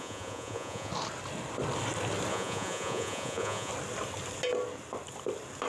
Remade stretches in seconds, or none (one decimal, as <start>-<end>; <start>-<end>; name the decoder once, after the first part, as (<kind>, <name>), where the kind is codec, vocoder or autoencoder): 0.0-0.9 (vocoder, Vocos); 2.3-3.7